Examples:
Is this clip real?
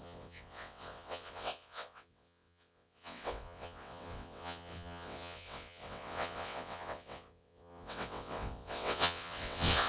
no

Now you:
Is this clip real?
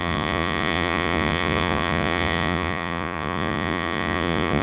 no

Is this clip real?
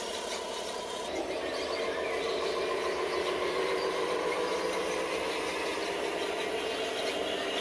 yes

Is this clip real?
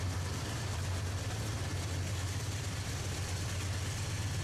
no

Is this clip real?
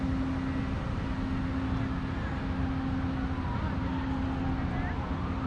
yes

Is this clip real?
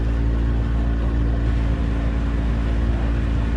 yes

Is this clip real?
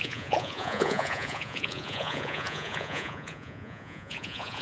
no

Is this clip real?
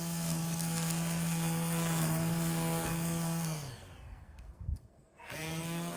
no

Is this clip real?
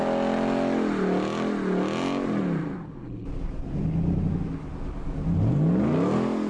yes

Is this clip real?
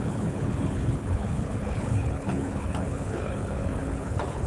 no